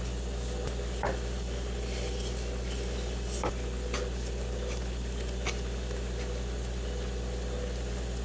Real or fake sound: real